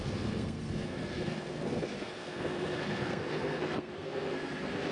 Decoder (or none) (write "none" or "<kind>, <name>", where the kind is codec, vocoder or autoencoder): codec, SNAC